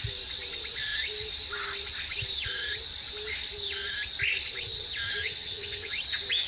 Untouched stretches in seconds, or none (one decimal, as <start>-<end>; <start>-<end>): 0.0-5.2; 5.9-6.5